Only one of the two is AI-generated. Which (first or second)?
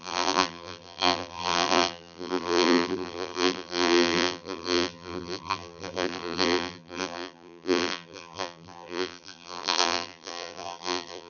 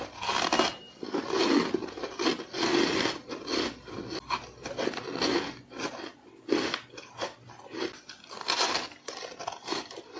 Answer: first